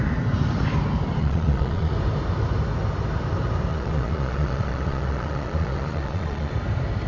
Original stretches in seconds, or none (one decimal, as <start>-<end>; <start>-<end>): 0.0-1.2; 1.9-3.7; 6.5-7.1